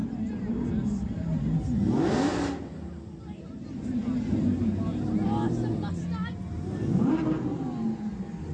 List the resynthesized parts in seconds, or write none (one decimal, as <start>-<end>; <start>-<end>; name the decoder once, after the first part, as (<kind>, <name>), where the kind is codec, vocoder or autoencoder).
none